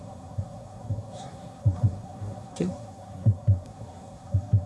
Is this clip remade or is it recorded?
remade